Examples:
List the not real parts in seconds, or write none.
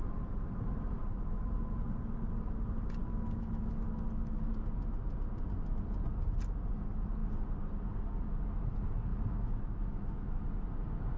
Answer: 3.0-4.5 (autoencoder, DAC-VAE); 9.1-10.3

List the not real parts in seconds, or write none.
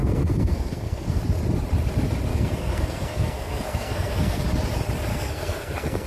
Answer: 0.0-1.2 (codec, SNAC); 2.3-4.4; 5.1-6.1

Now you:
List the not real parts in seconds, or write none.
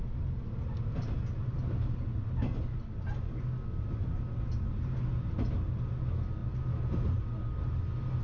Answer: none